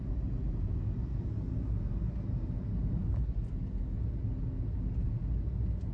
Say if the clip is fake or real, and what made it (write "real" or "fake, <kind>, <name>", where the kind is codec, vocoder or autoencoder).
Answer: real